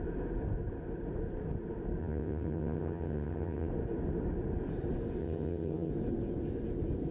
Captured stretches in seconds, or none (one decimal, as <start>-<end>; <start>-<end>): 0.0-2.0; 3.7-5.2; 5.9-7.1